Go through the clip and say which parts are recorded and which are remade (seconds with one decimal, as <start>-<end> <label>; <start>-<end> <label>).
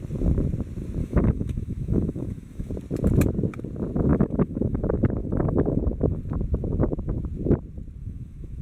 0.0-1.0 recorded; 1.0-2.7 remade; 2.7-4.1 recorded; 4.1-4.8 remade; 4.8-5.2 recorded; 5.2-5.8 remade; 5.8-8.0 recorded; 8.0-8.6 remade